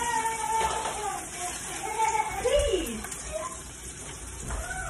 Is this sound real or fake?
fake